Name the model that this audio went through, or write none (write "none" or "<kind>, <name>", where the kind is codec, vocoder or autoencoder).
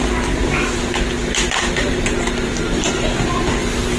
none